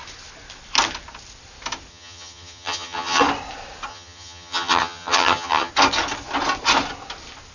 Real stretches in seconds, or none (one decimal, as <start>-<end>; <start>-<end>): 0.0-1.9; 3.2-3.9; 5.7-7.5